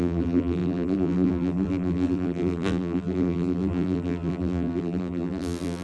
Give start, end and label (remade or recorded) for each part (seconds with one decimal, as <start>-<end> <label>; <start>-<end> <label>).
0.0-5.8 remade